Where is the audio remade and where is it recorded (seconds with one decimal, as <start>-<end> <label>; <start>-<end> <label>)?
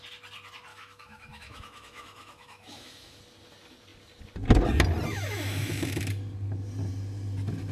0.0-0.7 recorded; 0.7-3.2 remade; 3.2-5.1 recorded; 5.1-6.1 remade; 6.1-7.7 recorded